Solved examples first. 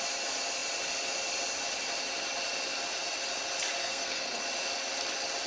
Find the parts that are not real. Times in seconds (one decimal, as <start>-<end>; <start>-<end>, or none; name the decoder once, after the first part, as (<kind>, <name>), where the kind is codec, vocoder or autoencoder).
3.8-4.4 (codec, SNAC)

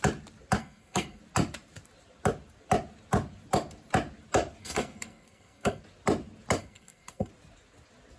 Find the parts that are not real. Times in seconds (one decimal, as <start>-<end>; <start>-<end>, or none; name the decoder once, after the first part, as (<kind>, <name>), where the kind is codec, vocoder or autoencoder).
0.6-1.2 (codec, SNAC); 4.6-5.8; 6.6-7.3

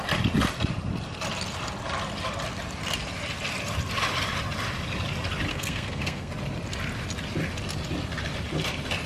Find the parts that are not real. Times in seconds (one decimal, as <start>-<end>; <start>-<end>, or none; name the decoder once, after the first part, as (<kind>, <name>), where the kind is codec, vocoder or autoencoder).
5.5-6.3 (codec, SNAC)